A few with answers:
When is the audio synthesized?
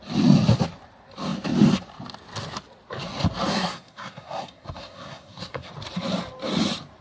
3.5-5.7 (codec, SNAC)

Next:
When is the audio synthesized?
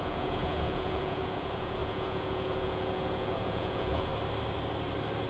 0.0-4.1 (vocoder, Vocos)